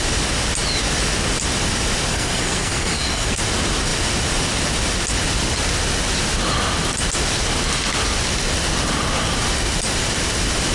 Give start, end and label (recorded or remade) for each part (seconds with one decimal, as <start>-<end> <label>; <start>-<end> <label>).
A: 0.0-2.1 recorded; 2.1-3.4 remade; 3.4-10.7 recorded